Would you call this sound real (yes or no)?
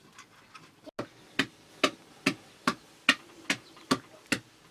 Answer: yes